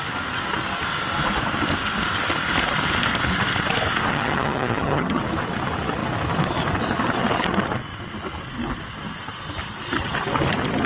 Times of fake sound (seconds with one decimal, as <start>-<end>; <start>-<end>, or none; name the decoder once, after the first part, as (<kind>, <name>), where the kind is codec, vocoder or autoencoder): 4.1-5.2 (vocoder, HiFi-GAN)